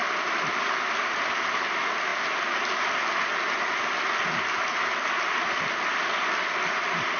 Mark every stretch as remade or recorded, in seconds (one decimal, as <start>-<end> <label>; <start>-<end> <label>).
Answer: 0.0-7.2 recorded